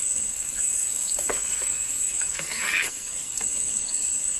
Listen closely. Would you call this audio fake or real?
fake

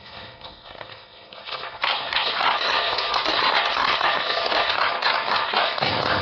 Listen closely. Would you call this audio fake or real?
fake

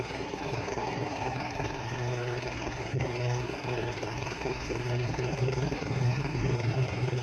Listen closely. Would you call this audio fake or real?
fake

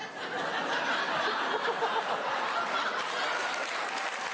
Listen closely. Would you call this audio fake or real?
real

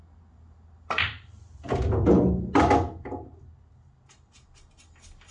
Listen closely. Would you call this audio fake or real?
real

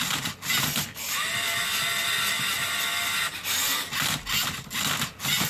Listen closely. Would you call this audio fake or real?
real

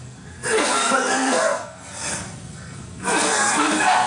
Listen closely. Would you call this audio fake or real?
fake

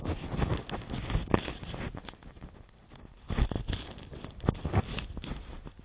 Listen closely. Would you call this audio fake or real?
real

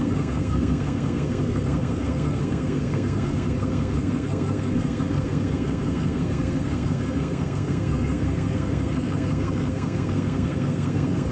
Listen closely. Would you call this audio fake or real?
fake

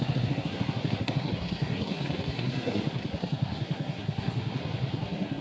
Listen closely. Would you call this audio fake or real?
fake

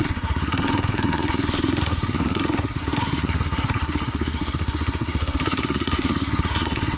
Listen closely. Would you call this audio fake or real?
fake